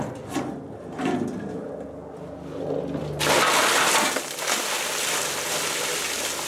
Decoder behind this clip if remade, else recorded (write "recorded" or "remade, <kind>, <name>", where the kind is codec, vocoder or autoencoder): recorded